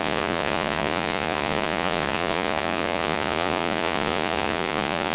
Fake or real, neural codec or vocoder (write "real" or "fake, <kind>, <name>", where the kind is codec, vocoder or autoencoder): fake, vocoder, Vocos